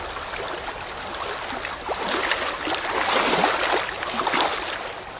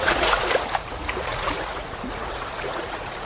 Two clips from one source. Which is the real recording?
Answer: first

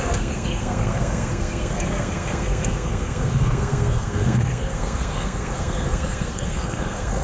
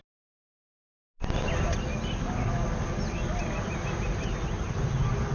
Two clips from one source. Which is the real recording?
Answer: second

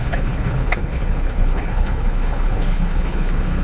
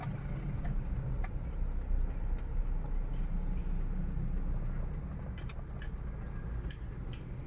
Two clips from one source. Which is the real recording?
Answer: second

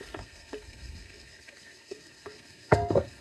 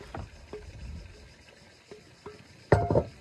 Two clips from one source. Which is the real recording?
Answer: second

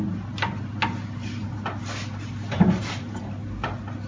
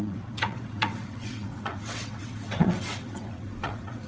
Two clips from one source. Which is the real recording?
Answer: first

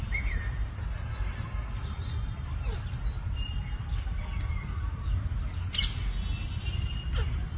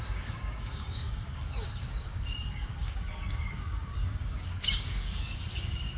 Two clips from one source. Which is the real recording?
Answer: first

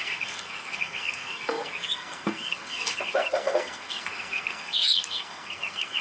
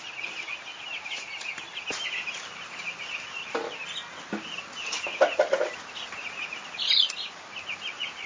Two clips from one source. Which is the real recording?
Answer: second